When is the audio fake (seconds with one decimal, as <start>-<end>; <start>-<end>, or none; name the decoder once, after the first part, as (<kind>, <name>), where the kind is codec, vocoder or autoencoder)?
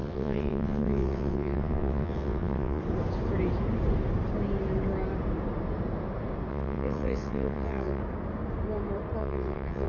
0.0-2.8 (vocoder, WaveNeXt); 6.5-8.0; 9.2-9.9